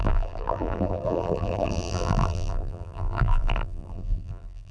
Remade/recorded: remade